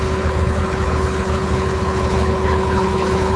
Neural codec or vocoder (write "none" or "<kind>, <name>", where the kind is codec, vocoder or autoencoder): codec, HILCodec